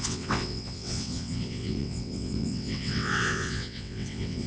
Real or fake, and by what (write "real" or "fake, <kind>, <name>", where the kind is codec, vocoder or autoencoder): fake, vocoder, WaveNeXt